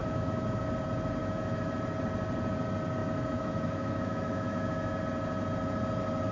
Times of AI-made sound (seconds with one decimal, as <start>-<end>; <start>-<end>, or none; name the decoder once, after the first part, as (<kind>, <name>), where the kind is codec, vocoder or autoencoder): 0.0-0.6 (autoencoder, DAC-VAE); 1.2-1.7; 3.0-5.0

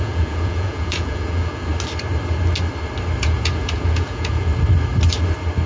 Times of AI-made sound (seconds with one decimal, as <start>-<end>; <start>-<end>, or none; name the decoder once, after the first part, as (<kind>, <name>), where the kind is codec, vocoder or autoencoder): 0.0-1.7 (vocoder, Vocos); 3.2-4.5

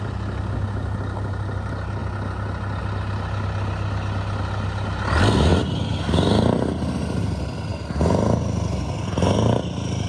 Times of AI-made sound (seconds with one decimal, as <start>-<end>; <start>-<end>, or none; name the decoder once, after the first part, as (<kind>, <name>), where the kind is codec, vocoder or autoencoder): none

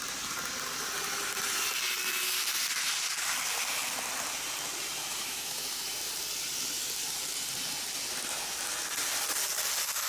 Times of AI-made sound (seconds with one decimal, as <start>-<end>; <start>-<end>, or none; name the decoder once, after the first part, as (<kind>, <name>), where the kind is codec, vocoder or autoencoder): 5.0-5.8 (autoencoder, DAC-VAE)

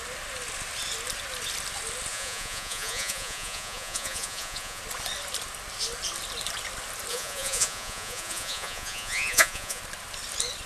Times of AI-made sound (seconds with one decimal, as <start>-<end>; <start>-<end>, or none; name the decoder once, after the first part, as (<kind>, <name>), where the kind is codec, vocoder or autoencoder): 2.1-4.8 (vocoder, Vocos); 7.1-9.8

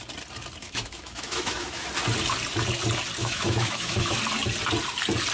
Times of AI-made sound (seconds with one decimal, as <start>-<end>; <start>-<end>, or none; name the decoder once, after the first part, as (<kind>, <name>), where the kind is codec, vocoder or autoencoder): 0.6-1.9 (autoencoder, DAC-VAE); 3.2-4.2

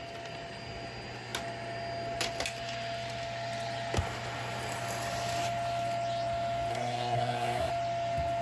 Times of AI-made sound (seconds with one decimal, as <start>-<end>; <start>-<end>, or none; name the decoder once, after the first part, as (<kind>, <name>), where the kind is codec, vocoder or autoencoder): 6.7-7.7 (codec, SNAC)

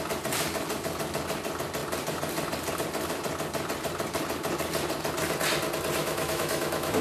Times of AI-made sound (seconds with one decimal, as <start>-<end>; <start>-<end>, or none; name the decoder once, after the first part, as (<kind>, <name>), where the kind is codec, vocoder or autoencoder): 6.0-7.0 (autoencoder, DAC-VAE)